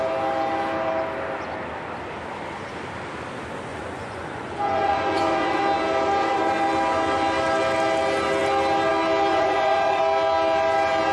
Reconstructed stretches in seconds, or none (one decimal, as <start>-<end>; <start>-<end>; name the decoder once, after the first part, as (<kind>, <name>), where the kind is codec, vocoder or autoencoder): 3.7-5.6 (vocoder, Vocos); 9.3-10.0